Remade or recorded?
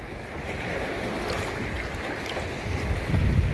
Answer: recorded